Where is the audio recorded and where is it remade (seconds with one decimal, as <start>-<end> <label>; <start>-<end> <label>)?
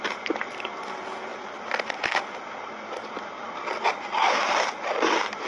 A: 0.0-5.5 recorded